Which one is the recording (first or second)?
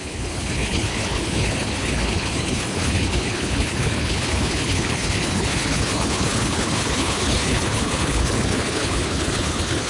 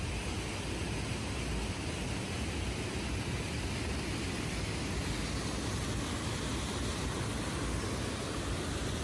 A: second